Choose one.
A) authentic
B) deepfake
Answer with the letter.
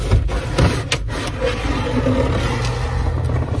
A